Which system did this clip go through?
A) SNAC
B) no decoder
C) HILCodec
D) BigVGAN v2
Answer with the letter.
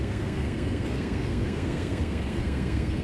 A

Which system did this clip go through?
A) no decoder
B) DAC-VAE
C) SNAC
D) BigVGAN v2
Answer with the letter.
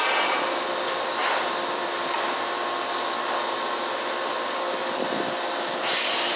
A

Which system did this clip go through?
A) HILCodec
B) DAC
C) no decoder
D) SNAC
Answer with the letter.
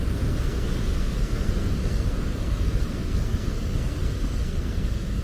D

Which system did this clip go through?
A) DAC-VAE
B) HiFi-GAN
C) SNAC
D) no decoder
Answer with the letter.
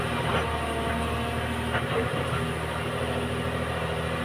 D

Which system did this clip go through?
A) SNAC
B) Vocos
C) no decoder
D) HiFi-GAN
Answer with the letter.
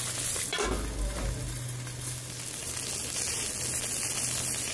C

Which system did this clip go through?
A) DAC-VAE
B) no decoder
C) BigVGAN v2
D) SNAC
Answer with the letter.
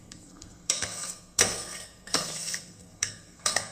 D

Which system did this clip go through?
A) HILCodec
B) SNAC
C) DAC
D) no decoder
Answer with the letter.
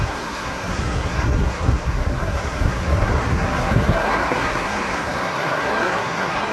B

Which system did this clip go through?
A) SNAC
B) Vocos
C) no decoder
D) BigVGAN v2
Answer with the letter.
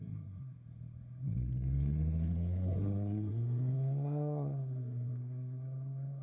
A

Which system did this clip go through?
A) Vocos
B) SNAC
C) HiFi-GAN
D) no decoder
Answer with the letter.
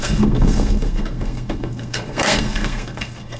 B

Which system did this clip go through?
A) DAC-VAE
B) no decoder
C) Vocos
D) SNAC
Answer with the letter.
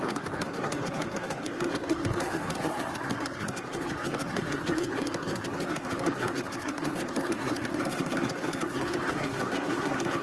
D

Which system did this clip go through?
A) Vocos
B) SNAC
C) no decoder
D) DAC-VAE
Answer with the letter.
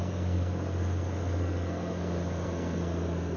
B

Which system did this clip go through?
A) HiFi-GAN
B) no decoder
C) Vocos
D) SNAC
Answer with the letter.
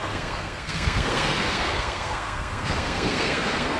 D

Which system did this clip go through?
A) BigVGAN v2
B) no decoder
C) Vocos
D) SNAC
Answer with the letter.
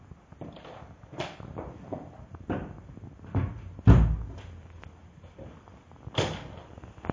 B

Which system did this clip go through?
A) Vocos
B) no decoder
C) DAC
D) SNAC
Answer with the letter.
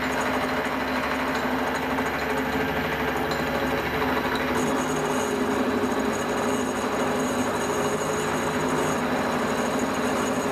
B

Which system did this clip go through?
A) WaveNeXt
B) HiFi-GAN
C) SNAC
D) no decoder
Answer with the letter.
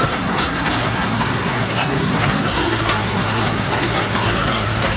C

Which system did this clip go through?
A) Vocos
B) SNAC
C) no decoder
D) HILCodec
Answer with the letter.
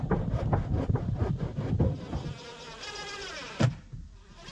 C